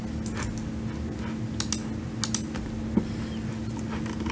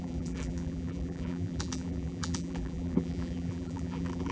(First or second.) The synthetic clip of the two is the second